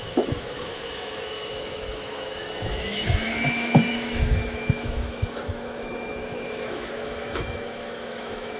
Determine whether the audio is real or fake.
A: fake